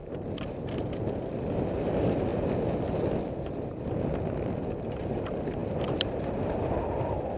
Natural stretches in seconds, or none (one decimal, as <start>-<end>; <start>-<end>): 0.9-2.3; 4.7-5.6; 6.3-7.4